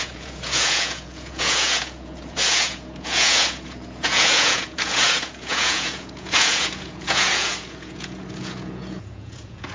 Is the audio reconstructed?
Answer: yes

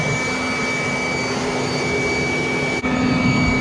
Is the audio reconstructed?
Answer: no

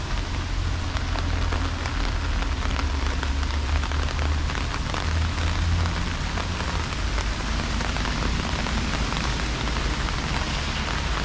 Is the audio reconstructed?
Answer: no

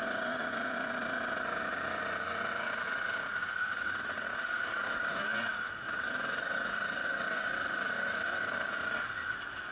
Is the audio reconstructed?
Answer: yes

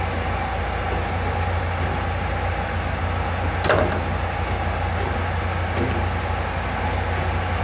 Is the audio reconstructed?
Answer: no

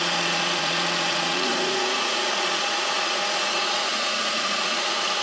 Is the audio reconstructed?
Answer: yes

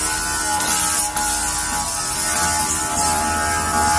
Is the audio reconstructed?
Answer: no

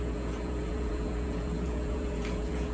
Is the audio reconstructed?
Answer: yes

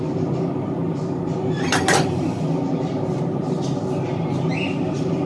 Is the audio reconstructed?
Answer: no